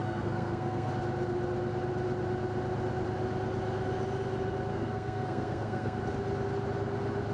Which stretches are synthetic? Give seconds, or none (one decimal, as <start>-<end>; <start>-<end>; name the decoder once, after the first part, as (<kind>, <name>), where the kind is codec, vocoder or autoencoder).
0.0-0.9 (codec, SNAC); 4.7-6.0